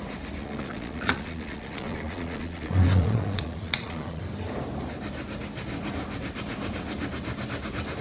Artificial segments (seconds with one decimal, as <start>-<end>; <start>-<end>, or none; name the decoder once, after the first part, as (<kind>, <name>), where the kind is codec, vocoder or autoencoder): 0.4-4.2 (vocoder, Vocos)